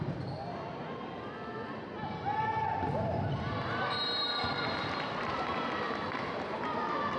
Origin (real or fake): real